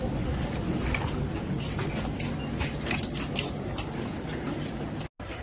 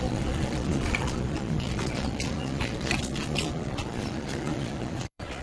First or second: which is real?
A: first